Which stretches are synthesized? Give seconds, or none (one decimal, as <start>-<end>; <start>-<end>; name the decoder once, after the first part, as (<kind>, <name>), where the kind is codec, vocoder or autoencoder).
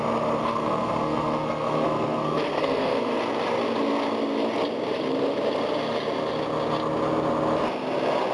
0.4-3.2 (codec, SNAC)